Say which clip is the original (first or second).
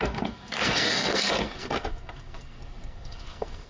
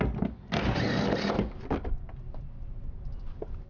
second